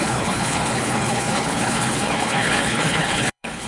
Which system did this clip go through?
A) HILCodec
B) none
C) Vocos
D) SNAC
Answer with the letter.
A